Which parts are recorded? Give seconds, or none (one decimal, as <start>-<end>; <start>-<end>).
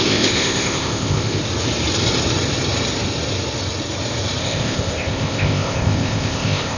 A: 1.4-4.4